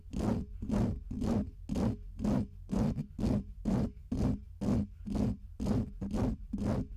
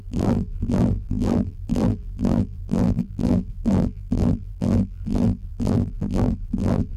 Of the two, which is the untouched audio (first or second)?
first